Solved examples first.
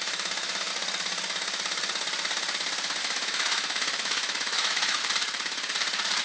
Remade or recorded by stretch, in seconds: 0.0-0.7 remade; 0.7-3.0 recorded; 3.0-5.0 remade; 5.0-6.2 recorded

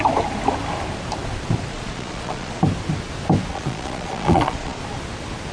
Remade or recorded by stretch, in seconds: 0.0-1.7 recorded; 1.7-2.6 remade; 2.6-3.5 recorded; 3.5-4.8 remade; 4.8-5.5 recorded